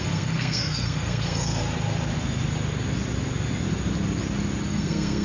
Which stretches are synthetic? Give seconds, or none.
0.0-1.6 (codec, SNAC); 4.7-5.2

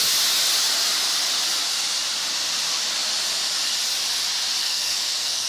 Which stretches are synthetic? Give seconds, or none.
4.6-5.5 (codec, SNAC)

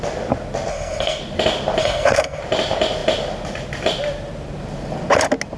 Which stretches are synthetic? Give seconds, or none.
0.7-1.2 (codec, SNAC); 1.8-2.4

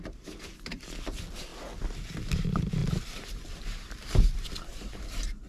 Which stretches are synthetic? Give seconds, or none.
0.0-1.5 (vocoder, BigVGAN v2); 2.2-5.5

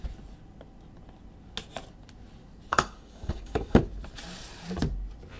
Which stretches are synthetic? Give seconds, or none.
2.7-3.8 (codec, DAC)

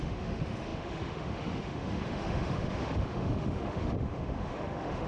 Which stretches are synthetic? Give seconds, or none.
0.0-5.1 (autoencoder, DAC-VAE)

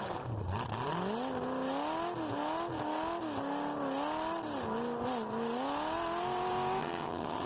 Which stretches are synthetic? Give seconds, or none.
6.8-7.5 (vocoder, HiFi-GAN)